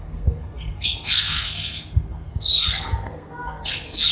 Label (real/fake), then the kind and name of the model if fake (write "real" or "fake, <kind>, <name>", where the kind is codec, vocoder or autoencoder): fake, codec, SNAC